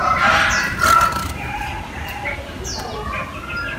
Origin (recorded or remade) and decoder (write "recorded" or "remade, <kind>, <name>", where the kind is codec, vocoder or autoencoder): recorded